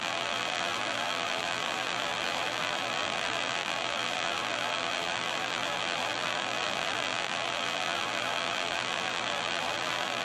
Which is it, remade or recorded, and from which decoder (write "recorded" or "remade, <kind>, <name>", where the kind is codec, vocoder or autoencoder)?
remade, vocoder, BigVGAN v2